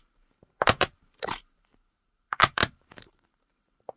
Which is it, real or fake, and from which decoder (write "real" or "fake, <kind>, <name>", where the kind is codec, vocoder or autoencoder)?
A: fake, vocoder, BigVGAN v2